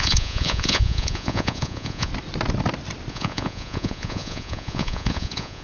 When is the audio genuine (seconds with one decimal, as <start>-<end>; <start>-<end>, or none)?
2.1-3.1